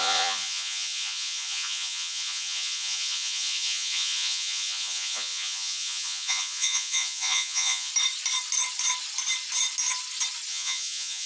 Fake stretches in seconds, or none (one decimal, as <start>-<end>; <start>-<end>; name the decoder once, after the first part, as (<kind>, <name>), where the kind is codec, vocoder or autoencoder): 0.0-7.9 (vocoder, Vocos); 10.5-11.3